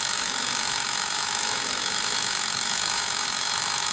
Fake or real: fake